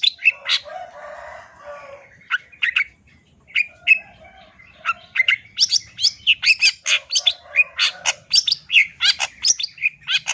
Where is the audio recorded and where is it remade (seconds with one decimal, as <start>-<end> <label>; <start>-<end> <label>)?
0.0-10.3 recorded